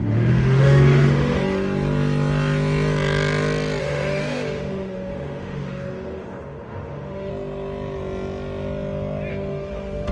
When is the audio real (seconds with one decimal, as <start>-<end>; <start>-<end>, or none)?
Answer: 1.4-3.8; 7.3-9.3